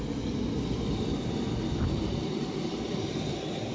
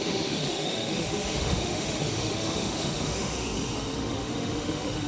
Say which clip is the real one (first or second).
first